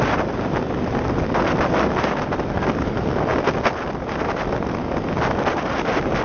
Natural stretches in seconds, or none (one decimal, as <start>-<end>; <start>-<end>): 0.0-6.2